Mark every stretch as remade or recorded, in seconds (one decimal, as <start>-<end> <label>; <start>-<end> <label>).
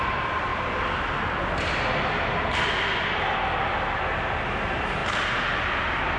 0.0-6.2 recorded